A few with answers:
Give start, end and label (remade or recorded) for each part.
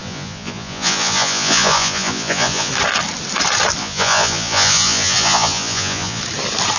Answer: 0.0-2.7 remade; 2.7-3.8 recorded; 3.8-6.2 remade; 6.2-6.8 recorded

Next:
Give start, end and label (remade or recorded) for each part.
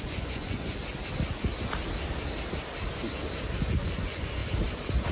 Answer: 0.0-0.8 remade; 0.8-3.8 recorded; 3.8-4.4 remade; 4.4-5.1 recorded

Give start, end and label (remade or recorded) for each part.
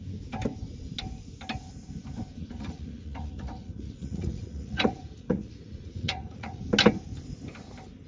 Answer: 0.0-2.4 recorded; 2.4-6.6 remade; 6.6-8.1 recorded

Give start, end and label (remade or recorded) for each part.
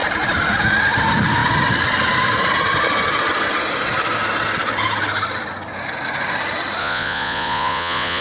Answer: 0.0-6.8 recorded; 6.8-8.2 remade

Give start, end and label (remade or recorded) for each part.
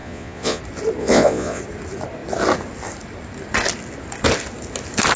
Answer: 0.0-0.6 remade; 0.6-1.0 recorded; 1.0-1.6 remade; 1.6-5.2 recorded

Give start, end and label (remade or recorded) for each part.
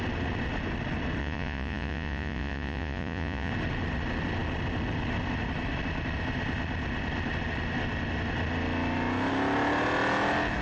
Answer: 0.0-1.2 recorded; 1.2-3.5 remade; 3.5-10.6 recorded